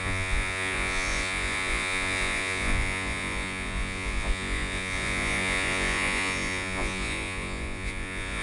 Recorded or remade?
remade